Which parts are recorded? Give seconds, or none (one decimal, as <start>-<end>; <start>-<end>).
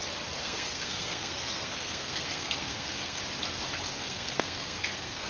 0.0-0.4; 3.2-3.9